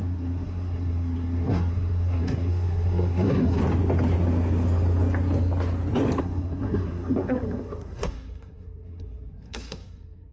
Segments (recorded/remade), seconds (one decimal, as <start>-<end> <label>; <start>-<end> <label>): 0.0-3.6 remade; 3.6-6.2 recorded; 6.2-10.3 remade